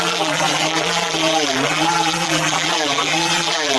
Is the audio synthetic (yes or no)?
yes